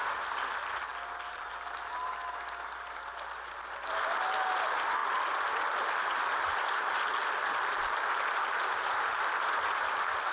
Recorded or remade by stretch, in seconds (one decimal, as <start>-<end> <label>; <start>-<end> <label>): 0.0-10.3 recorded